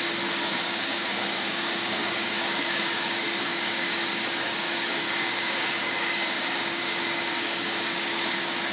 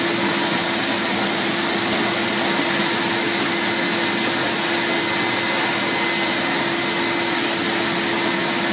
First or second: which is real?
second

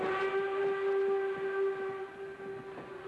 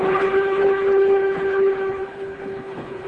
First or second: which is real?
first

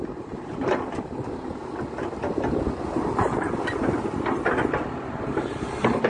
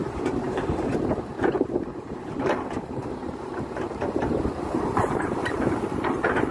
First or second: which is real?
first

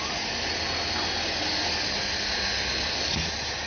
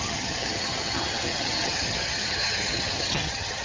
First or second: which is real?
first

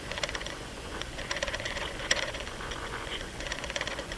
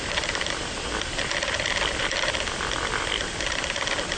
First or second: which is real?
second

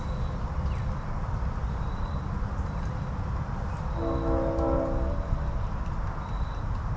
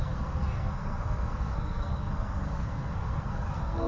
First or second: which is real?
first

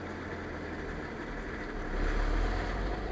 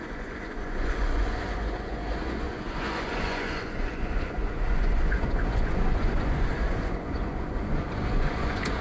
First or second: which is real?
first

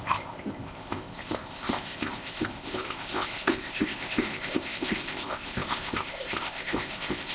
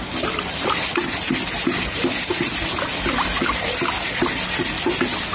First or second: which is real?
second